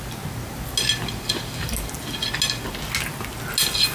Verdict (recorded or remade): recorded